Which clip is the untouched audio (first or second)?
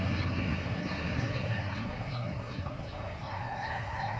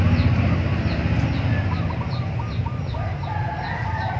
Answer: second